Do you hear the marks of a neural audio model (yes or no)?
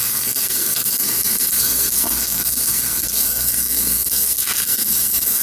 yes